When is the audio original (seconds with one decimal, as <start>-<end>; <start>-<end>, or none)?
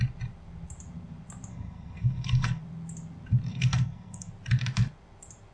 0.0-1.5; 2.6-3.5; 4.3-5.5